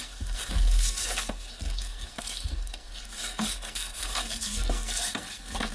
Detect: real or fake fake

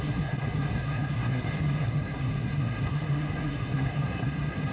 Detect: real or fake fake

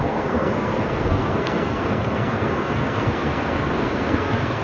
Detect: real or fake fake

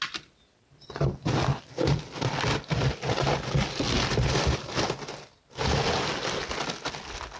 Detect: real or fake real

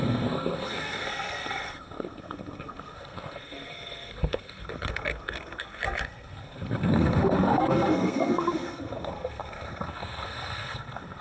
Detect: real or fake fake